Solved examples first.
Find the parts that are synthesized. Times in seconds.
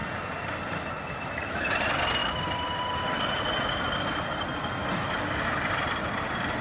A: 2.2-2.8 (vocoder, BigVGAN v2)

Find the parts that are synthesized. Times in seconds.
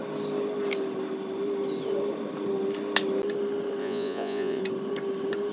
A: 3.8-4.6 (vocoder, Vocos)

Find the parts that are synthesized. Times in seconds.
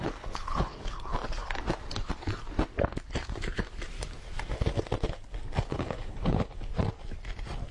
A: 0.0-1.1 (codec, HILCodec); 5.7-6.7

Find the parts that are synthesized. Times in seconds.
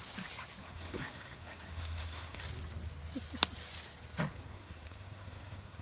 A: 0.6-2.4 (codec, SNAC); 4.3-5.8